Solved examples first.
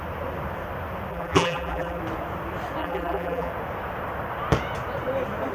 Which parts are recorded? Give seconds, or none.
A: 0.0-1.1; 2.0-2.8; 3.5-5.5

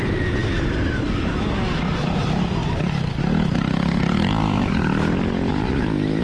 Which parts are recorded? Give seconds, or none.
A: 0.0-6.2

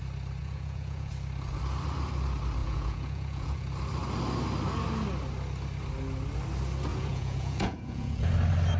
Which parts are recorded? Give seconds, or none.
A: 0.0-0.4; 1.1-2.6; 3.6-6.9; 8.3-8.8